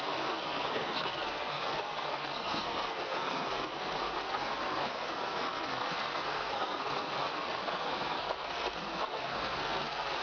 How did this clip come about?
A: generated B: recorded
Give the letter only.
A